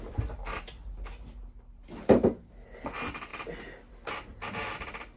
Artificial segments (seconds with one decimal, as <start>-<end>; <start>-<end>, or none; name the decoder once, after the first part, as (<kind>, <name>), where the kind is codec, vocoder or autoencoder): none